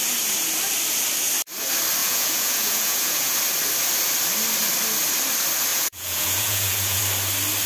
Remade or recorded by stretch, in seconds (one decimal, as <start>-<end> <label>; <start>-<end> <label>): 0.0-2.0 recorded; 2.0-3.4 remade; 3.4-5.7 recorded; 5.7-7.0 remade; 7.0-7.7 recorded